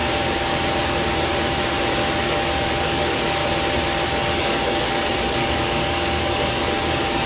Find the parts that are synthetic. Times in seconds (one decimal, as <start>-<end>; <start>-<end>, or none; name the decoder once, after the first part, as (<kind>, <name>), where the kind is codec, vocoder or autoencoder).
2.2-3.4 (codec, DAC); 4.4-7.3

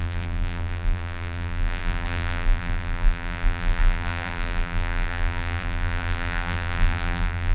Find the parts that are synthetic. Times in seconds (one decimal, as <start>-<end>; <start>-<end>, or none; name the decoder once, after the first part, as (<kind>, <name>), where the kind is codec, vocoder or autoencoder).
0.0-7.5 (vocoder, BigVGAN v2)

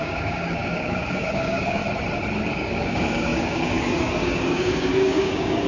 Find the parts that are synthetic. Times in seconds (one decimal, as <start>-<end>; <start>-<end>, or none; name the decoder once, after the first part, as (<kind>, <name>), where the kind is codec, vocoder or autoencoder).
0.0-1.8 (codec, DAC); 2.5-5.7

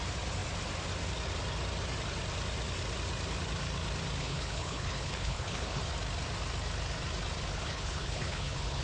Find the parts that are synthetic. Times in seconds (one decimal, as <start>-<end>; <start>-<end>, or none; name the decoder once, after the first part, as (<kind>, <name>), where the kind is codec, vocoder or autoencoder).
4.2-5.8 (codec, HILCodec); 7.5-8.8

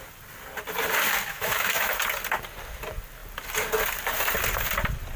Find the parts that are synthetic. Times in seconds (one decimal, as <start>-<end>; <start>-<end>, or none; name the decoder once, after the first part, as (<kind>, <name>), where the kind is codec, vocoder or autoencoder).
1.3-2.0 (autoencoder, DAC-VAE)

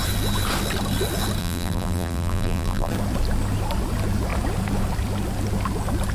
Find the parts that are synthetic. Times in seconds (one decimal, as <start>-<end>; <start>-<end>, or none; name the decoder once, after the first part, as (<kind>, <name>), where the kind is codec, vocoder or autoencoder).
1.4-2.9 (vocoder, BigVGAN v2)

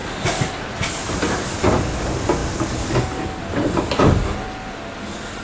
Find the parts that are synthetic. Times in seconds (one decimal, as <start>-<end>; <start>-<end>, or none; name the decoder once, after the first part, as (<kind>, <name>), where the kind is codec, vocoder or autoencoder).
none

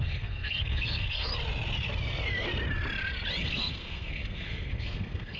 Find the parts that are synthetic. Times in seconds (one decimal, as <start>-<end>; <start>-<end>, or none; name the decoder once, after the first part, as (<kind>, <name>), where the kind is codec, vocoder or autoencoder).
0.0-1.3 (codec, SNAC); 3.4-5.4